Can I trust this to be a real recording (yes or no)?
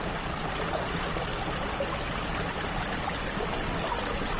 yes